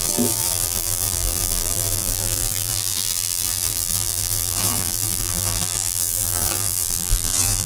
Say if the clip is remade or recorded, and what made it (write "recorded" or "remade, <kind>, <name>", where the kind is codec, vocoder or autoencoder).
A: remade, vocoder, BigVGAN v2